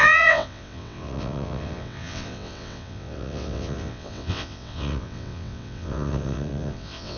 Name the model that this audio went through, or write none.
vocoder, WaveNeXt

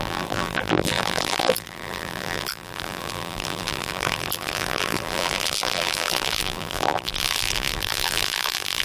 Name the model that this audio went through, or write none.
vocoder, BigVGAN v2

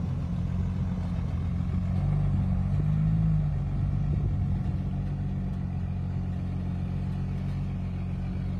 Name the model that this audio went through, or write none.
none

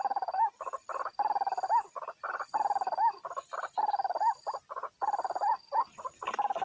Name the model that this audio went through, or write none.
none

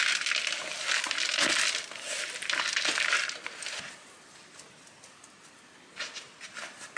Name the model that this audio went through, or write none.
none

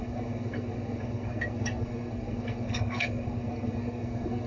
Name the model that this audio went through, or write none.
codec, SNAC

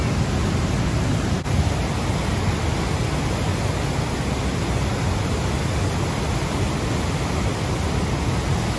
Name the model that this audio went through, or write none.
none